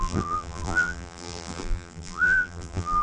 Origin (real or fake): fake